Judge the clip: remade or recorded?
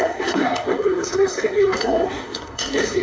remade